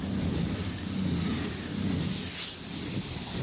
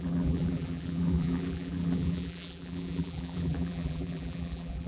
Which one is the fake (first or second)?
second